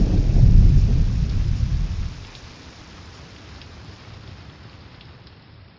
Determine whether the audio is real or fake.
real